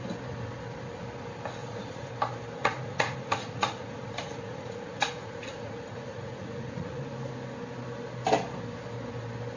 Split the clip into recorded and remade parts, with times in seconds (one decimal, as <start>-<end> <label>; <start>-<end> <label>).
0.0-1.6 recorded; 1.6-2.1 remade; 2.1-2.6 recorded; 2.6-7.0 remade; 7.0-9.6 recorded

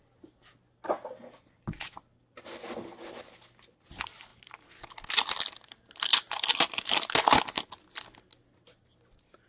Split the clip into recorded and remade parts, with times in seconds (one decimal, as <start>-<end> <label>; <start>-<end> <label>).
0.0-9.5 recorded

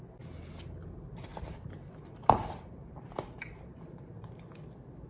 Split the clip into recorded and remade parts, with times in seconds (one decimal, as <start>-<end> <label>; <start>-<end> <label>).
0.0-1.3 recorded; 1.3-4.4 remade; 4.4-5.1 recorded

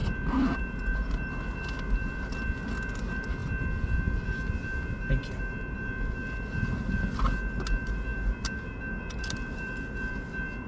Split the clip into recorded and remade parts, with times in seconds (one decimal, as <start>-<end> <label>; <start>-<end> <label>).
0.0-10.7 recorded

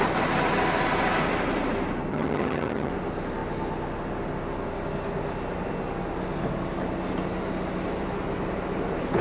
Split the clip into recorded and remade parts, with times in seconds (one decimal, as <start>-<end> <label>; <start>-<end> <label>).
0.0-2.1 recorded; 2.1-2.9 remade; 2.9-9.2 recorded

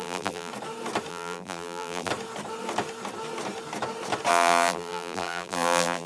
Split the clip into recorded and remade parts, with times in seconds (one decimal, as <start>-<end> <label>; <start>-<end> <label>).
0.0-0.5 remade; 0.5-1.1 recorded; 1.1-2.1 remade; 2.1-4.3 recorded; 4.3-6.1 remade

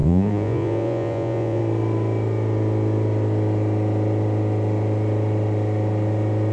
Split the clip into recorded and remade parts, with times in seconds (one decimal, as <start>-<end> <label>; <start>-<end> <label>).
0.0-1.6 remade; 1.6-6.5 recorded

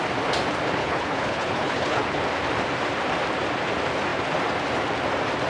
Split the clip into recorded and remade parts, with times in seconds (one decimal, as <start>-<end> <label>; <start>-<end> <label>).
0.0-0.8 recorded; 0.8-2.2 remade; 2.2-5.5 recorded